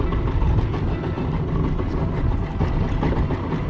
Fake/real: real